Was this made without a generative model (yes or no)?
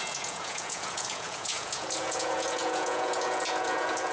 no